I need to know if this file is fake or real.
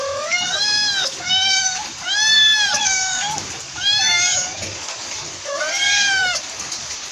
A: fake